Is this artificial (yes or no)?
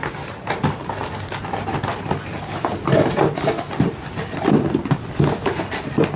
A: no